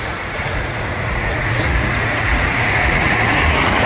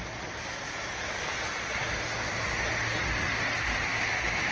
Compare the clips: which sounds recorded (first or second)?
second